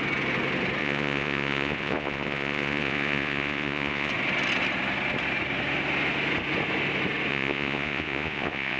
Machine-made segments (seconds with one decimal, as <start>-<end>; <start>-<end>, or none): 0.8-4.1; 7.3-8.8